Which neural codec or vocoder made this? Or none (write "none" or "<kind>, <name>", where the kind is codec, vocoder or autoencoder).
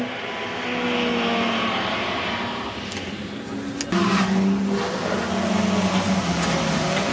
none